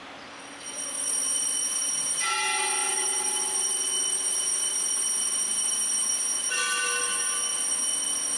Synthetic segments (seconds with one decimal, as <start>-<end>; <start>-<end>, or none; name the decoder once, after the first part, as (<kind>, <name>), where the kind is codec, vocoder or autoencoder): none